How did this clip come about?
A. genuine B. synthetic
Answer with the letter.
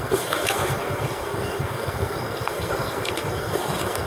B